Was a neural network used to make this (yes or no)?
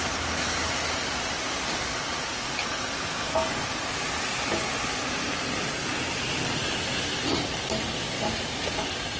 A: no